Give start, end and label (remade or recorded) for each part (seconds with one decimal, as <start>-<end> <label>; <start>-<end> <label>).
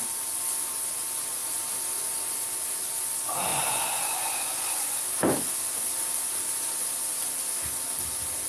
0.0-3.5 recorded; 3.5-5.0 remade; 5.0-8.5 recorded